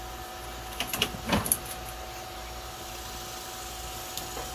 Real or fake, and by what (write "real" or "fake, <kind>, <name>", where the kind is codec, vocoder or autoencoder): real